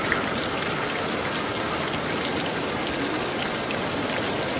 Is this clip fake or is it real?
real